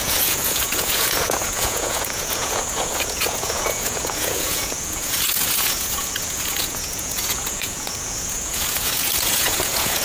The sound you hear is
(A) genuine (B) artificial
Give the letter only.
B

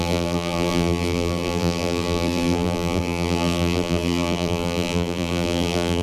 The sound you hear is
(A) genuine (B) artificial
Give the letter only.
B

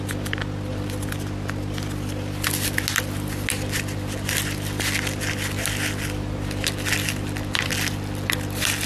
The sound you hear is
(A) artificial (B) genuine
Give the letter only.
B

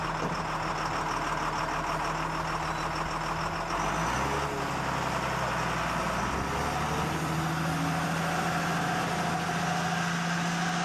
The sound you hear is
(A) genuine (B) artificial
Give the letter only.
A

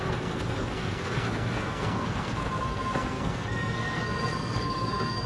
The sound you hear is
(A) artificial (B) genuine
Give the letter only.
A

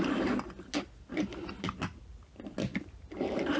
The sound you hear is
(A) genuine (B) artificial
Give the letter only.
A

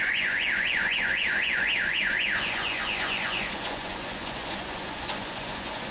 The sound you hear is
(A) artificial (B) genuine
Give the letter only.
A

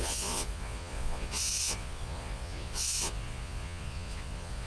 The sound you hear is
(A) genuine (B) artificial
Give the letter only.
B